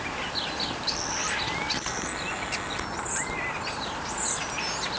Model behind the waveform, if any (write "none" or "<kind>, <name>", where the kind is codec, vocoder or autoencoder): none